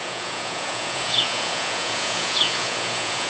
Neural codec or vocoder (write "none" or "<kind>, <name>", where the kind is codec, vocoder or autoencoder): vocoder, Vocos